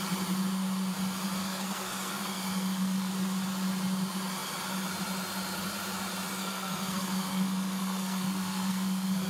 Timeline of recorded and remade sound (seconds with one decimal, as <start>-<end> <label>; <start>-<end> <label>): 0.0-1.4 recorded; 1.4-3.1 remade; 3.1-6.4 recorded; 6.4-9.3 remade